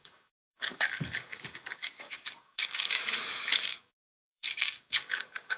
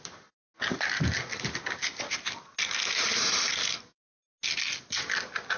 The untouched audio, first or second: second